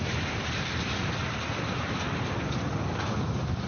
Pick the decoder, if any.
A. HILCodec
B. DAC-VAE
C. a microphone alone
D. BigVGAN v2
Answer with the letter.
C